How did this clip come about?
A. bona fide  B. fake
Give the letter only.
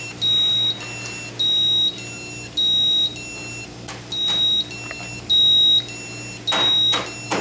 A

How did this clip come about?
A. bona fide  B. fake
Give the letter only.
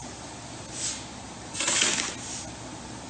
A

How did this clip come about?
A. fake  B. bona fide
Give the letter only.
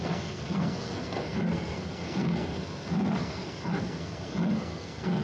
A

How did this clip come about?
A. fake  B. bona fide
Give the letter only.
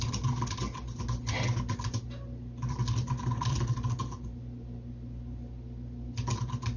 B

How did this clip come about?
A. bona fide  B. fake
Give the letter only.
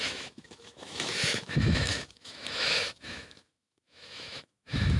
B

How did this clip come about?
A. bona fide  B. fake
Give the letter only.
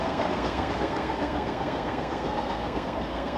B